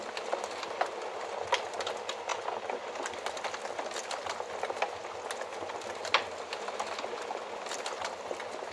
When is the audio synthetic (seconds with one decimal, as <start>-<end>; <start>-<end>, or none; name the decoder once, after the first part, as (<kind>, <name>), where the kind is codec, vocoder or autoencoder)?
none